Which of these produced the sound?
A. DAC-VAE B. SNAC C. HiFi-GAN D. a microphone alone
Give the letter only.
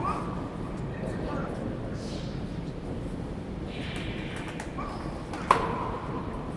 D